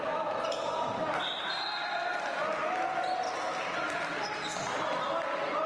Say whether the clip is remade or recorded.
recorded